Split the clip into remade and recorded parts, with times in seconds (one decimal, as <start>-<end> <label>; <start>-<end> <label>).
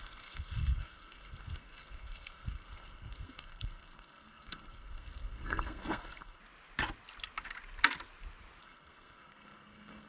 0.0-6.4 remade; 6.4-8.6 recorded; 8.6-10.1 remade